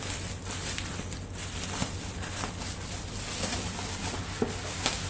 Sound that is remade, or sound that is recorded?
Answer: recorded